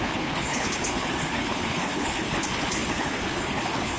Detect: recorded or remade remade